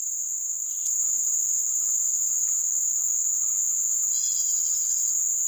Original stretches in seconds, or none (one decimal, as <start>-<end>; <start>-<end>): 0.0-2.6; 3.4-5.5